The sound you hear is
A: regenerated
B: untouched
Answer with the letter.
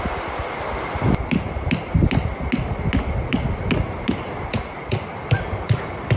B